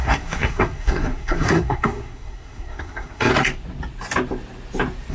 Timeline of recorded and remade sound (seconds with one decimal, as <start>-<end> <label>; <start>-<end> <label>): 0.0-3.3 remade; 3.3-5.1 recorded